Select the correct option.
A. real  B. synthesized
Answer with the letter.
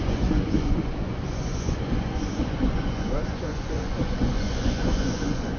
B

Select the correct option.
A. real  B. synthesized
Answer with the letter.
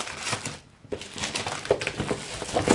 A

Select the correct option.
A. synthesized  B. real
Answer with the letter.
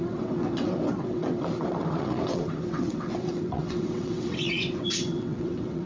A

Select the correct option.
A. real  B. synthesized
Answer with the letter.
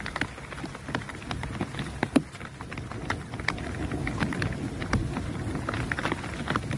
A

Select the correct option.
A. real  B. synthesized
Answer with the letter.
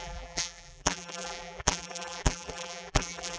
B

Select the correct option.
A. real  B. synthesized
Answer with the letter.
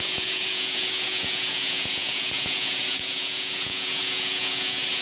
B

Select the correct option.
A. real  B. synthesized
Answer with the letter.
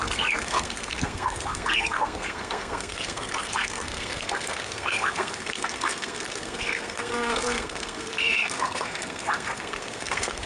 B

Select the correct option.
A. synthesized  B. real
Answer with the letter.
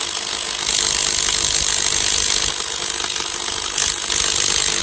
B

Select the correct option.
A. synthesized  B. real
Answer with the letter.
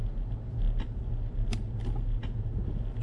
B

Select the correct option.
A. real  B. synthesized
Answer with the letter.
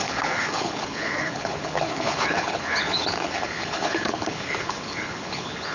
B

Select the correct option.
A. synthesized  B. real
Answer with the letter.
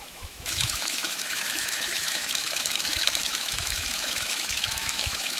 A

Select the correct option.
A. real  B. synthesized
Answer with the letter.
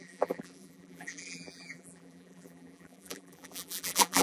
B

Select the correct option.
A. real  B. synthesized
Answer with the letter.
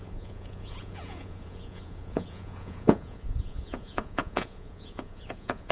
B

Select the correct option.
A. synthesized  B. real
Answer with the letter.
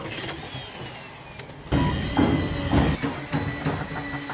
B